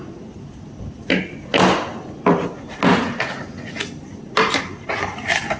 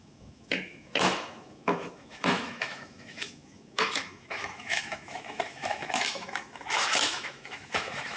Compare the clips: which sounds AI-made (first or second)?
second